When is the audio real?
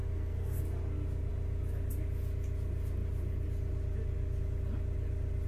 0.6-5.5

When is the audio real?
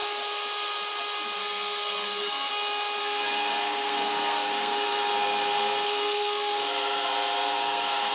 0.0-1.4; 2.5-3.0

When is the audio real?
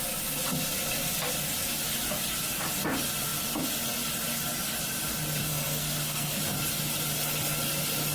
0.0-5.4; 6.4-8.1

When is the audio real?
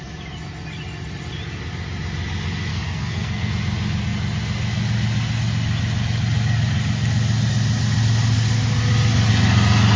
0.0-2.7; 3.5-10.0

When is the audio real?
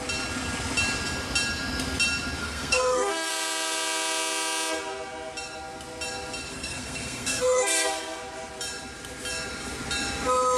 0.0-2.4; 3.3-6.5; 8.2-10.6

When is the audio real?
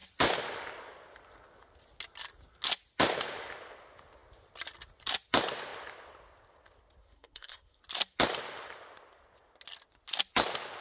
0.0-7.0; 7.8-10.8